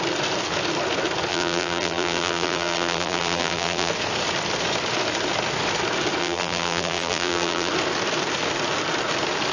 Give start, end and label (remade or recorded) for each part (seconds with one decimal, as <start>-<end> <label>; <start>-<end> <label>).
0.0-1.3 recorded; 1.3-3.9 remade; 3.9-6.2 recorded; 6.2-7.7 remade; 7.7-9.5 recorded